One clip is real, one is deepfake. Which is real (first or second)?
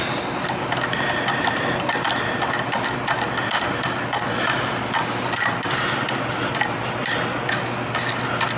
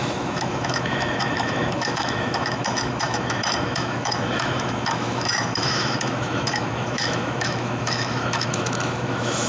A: first